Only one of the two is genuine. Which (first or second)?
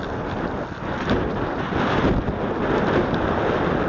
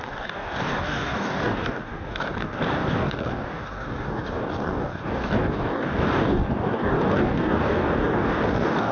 first